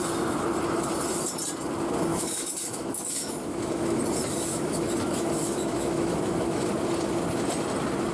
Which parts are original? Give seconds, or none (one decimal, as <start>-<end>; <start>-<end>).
0.0-2.1; 4.0-4.5; 6.7-8.1